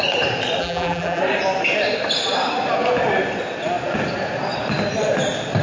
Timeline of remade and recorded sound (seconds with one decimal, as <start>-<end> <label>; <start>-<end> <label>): 0.0-0.6 recorded; 0.6-1.2 remade; 1.2-5.6 recorded